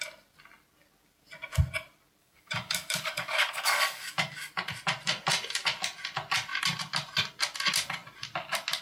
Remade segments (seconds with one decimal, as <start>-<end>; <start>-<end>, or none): 2.2-4.5